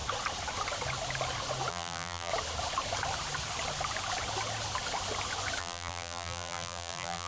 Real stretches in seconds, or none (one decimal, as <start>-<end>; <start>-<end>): 0.0-1.7; 2.3-5.6